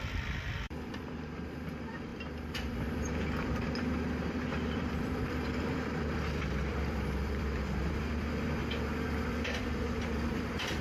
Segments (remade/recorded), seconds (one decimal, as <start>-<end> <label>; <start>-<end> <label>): 0.0-8.6 remade; 8.6-9.3 recorded; 9.3-10.8 remade